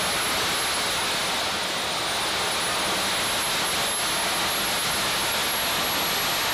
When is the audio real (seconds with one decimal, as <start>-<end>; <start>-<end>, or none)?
0.0-6.5